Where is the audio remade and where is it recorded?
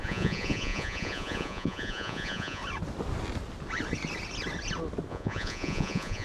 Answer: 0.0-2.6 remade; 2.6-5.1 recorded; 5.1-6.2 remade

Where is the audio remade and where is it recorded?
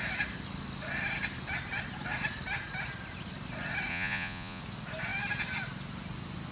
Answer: 0.0-3.9 recorded; 3.9-4.6 remade; 4.6-6.5 recorded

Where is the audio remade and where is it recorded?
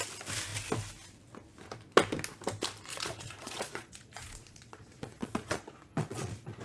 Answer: 0.0-2.9 recorded; 2.9-6.6 remade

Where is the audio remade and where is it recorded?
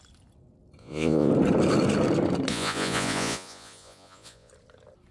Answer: 0.0-0.8 recorded; 0.8-1.3 remade; 1.3-2.5 recorded; 2.5-4.5 remade; 4.5-5.1 recorded